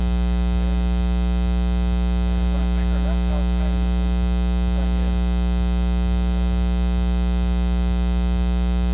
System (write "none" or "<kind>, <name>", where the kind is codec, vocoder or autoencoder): none